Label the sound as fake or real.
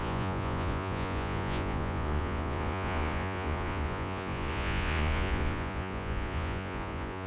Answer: fake